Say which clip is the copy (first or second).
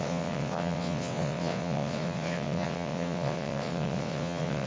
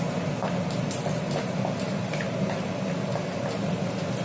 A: first